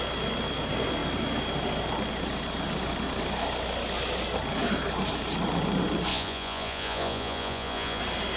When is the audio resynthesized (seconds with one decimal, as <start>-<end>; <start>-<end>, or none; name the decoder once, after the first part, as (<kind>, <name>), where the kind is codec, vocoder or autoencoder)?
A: 6.1-8.0 (vocoder, Vocos)